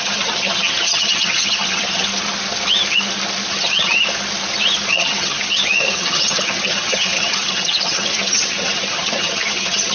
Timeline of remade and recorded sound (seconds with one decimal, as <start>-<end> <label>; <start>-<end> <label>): 0.0-2.1 remade; 2.1-3.5 recorded; 3.5-4.0 remade; 4.0-4.9 recorded; 4.9-9.9 remade